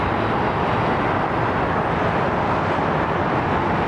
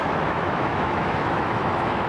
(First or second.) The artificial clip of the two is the second